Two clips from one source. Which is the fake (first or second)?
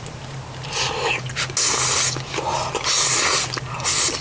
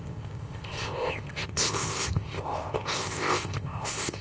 second